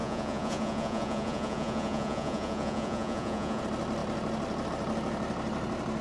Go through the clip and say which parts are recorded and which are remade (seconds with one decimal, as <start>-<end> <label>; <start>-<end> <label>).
0.0-3.6 remade; 3.6-6.0 recorded